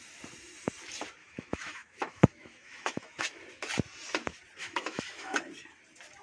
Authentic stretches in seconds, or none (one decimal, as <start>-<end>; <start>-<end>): 0.0-1.2; 3.2-4.6; 5.4-6.2